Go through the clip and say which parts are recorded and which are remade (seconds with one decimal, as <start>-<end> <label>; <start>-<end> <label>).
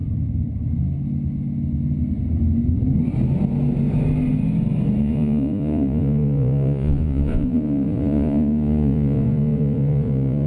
0.0-5.0 recorded; 5.0-10.5 remade